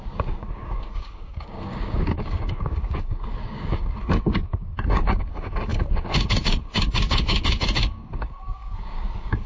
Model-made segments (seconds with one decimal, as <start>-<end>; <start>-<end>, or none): 0.0-9.5